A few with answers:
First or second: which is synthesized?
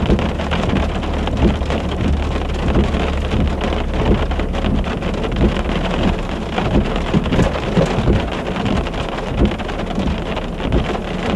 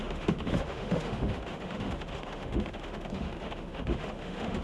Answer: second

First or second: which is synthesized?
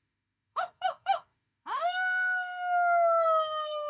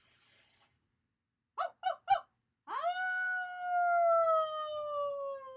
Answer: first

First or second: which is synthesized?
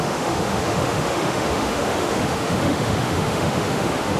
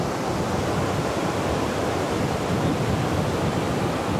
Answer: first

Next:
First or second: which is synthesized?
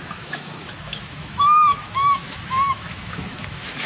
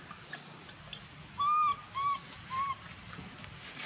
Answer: first